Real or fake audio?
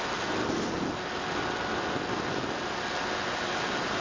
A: real